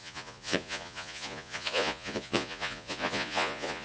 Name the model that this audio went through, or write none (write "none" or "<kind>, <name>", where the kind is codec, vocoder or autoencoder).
vocoder, Vocos